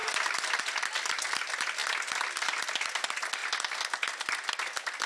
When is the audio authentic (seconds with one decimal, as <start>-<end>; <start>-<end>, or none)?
0.0-5.1